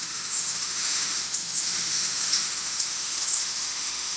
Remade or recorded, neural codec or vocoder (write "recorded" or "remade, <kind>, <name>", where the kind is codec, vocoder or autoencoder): remade, autoencoder, DAC-VAE